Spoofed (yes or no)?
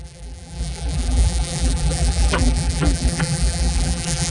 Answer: yes